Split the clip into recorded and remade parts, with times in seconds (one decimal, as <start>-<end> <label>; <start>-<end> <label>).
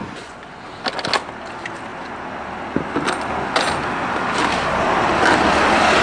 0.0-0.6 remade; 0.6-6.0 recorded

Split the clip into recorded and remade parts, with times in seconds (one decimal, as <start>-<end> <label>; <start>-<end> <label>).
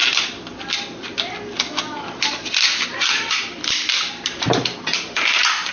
0.0-5.7 recorded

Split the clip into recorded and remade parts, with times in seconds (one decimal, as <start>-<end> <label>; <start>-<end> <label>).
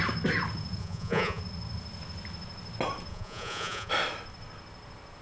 0.0-0.8 recorded; 0.8-1.4 remade; 1.4-3.1 recorded; 3.1-3.9 remade; 3.9-5.2 recorded